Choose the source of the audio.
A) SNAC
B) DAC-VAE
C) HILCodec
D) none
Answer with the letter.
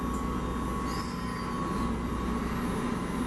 D